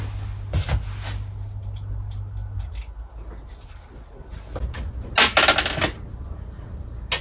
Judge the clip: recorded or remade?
recorded